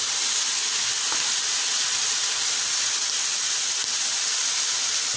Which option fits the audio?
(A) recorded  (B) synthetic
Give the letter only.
A